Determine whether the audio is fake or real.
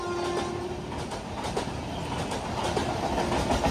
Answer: real